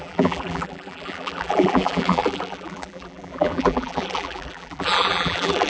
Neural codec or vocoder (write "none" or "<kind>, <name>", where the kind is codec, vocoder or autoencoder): vocoder, BigVGAN v2